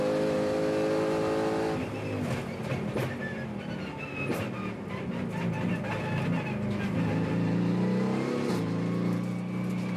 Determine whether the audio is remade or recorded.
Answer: recorded